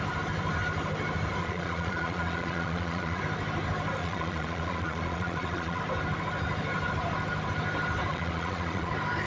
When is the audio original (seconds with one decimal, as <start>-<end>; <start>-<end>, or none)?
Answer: 0.0-1.4; 3.2-4.0; 5.8-8.1; 8.9-9.3